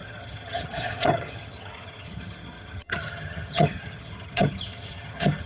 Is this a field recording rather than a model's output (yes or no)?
no